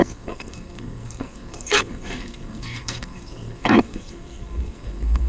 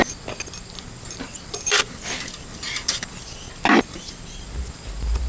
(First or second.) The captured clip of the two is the second